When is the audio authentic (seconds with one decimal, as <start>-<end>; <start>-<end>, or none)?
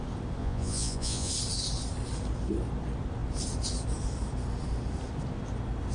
0.0-0.4; 1.3-5.9